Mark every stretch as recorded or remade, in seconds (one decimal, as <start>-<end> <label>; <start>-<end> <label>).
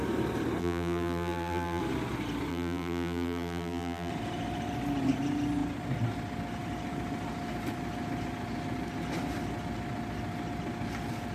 0.0-0.6 recorded; 0.6-1.8 remade; 1.8-2.5 recorded; 2.5-4.1 remade; 4.1-11.3 recorded